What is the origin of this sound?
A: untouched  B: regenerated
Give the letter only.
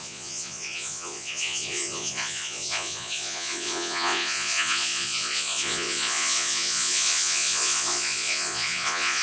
B